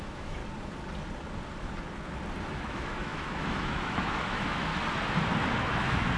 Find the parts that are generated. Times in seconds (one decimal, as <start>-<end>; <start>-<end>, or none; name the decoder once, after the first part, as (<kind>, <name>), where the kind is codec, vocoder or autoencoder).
0.0-0.4 (autoencoder, DAC-VAE); 2.5-4.7; 5.5-6.2